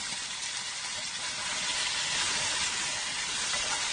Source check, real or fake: real